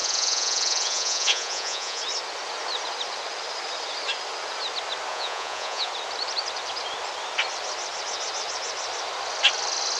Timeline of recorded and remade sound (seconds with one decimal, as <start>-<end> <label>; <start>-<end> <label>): 0.0-2.0 remade; 2.0-5.1 recorded; 5.1-5.9 remade; 5.9-10.0 recorded

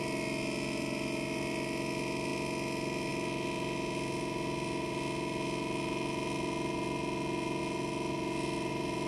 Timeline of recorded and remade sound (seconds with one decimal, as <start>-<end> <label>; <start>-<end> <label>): 0.0-9.1 recorded

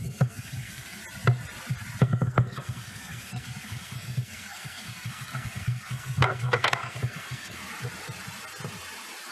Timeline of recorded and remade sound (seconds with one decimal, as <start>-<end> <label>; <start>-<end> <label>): 0.0-1.0 remade; 1.0-2.0 recorded; 2.0-7.6 remade; 7.6-9.3 recorded

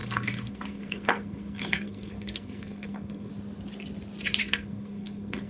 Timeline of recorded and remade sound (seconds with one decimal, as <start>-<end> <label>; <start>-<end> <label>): 0.0-3.3 remade; 3.3-4.4 recorded; 4.4-5.5 remade

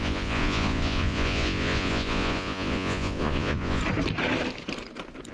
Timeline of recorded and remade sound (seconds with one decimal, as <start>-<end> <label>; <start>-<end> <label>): 0.0-3.8 remade; 3.8-5.3 recorded

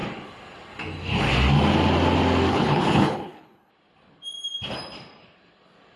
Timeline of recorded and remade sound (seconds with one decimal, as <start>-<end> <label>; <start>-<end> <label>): 0.0-2.5 recorded; 2.5-3.7 remade; 3.7-6.0 recorded

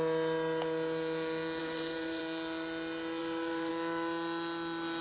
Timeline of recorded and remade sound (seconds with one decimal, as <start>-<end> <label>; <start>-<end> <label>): 0.0-1.6 recorded; 1.6-2.2 remade; 2.2-3.2 recorded; 3.2-3.7 remade; 3.7-5.0 recorded

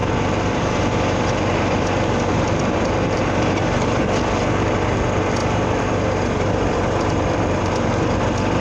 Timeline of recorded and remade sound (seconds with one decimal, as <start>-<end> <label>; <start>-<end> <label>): 0.0-0.8 remade; 0.8-2.3 recorded; 2.3-3.2 remade; 3.2-5.4 recorded; 5.4-7.9 remade; 7.9-8.6 recorded